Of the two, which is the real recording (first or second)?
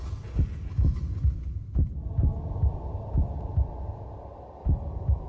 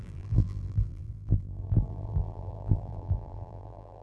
first